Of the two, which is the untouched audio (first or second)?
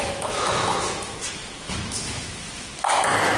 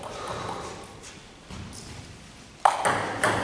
second